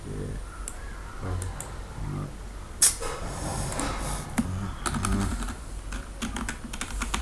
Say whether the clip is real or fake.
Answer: real